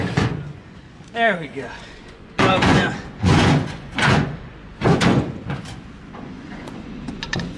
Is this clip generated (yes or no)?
yes